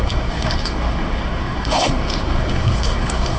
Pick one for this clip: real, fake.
fake